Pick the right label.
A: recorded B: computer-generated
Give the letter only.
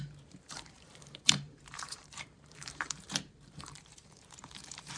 B